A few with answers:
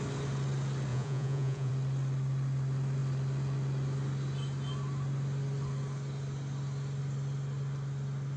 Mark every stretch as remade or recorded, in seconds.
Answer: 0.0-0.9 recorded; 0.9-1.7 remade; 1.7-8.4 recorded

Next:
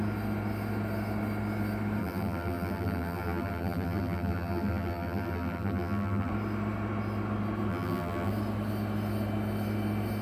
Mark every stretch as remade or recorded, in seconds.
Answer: 0.0-2.0 recorded; 2.0-6.3 remade; 6.3-7.7 recorded; 7.7-8.3 remade; 8.3-10.2 recorded

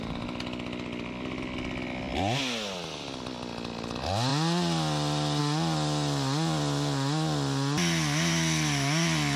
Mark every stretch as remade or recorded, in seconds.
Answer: 0.0-9.4 recorded